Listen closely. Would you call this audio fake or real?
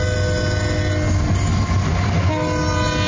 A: real